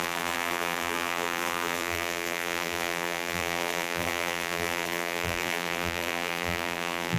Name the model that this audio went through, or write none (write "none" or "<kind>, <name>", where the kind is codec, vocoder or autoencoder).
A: vocoder, BigVGAN v2